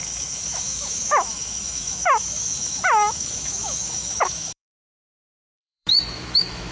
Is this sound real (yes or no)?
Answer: no